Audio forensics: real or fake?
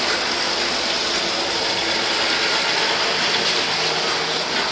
real